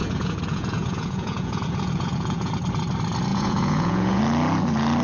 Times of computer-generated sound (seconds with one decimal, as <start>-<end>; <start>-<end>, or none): 0.0-2.5; 3.3-4.2